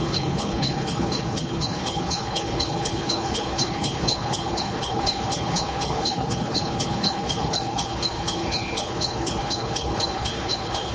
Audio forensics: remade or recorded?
remade